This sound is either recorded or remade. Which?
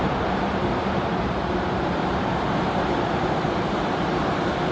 remade